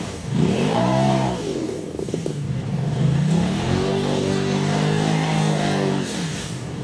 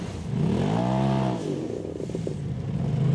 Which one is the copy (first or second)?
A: first